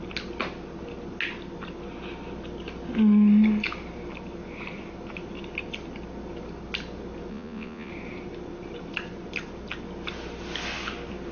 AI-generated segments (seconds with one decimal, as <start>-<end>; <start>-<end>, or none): 7.3-7.9